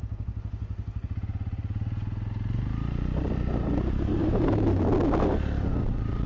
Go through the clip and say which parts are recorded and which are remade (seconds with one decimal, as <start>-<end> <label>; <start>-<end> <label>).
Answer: 0.0-4.2 recorded; 4.2-4.8 remade; 4.8-6.3 recorded